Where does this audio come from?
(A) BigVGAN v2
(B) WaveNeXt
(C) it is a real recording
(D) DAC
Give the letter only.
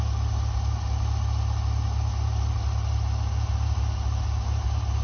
C